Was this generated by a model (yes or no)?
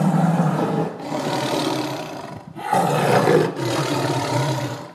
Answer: yes